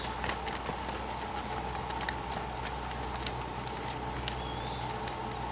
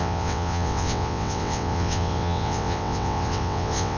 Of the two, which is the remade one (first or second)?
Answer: second